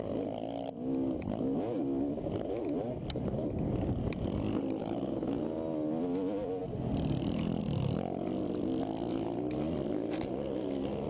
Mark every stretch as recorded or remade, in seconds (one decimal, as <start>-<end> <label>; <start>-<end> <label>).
0.0-4.8 recorded; 4.8-5.4 remade; 5.4-11.1 recorded